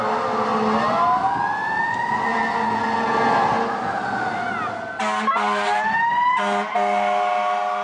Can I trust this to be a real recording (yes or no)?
yes